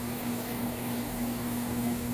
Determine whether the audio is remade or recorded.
remade